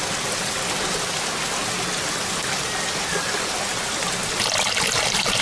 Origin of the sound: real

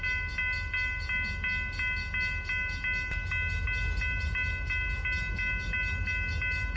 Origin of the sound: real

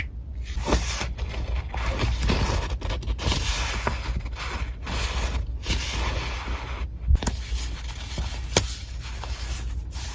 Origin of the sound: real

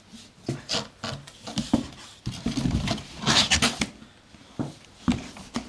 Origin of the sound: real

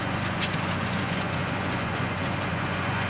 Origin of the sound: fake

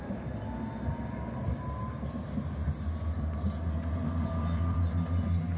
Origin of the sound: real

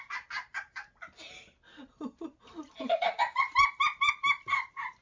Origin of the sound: real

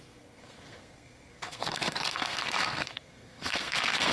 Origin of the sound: fake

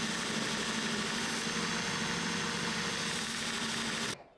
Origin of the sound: real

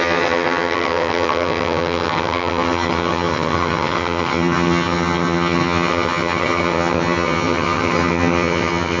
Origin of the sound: fake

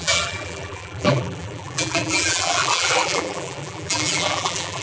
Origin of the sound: fake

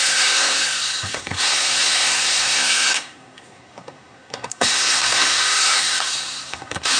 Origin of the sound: fake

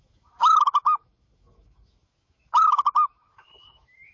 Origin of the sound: fake